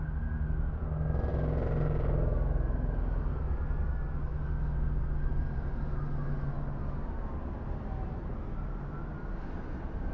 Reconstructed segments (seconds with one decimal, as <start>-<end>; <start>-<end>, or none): none